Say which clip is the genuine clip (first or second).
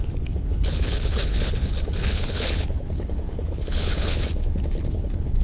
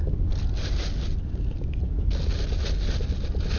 second